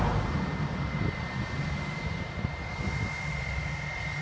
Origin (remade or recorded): recorded